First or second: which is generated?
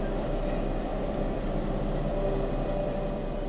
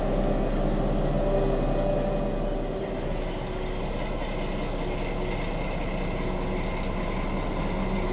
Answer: first